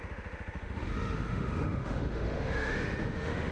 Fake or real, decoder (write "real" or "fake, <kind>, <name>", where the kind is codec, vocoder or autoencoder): fake, autoencoder, DAC-VAE